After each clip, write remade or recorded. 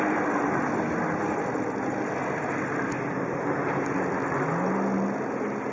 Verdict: recorded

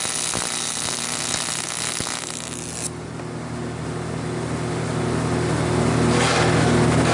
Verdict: recorded